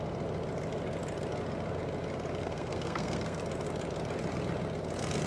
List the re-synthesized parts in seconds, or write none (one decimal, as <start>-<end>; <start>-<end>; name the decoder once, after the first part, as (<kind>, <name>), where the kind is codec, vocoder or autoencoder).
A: 2.4-3.4 (codec, SNAC)